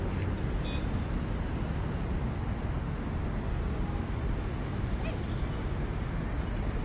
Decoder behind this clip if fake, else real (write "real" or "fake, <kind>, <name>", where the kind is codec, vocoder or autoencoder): real